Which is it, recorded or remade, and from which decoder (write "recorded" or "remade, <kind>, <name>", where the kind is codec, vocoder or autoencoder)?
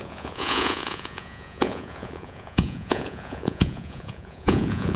remade, vocoder, Vocos